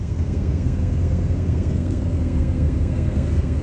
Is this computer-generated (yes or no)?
yes